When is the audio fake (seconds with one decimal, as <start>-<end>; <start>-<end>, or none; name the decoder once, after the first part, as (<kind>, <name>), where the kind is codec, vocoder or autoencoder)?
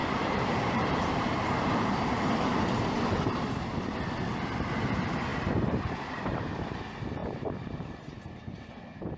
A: 0.0-2.3 (vocoder, BigVGAN v2); 5.3-6.8; 7.2-8.7